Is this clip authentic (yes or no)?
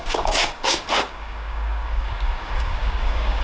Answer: no